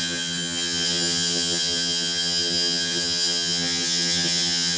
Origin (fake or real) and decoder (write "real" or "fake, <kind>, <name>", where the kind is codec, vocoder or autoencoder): fake, vocoder, HiFi-GAN